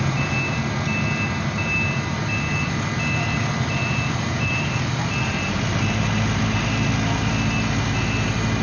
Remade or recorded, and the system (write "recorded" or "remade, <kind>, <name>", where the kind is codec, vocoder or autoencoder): recorded